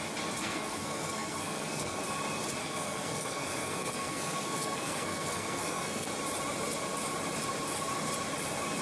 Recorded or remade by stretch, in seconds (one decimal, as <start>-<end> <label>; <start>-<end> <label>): 0.0-0.4 recorded; 0.4-2.0 remade; 2.0-2.6 recorded; 2.6-6.1 remade; 6.1-8.8 recorded